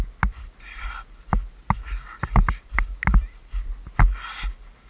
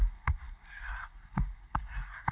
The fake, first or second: second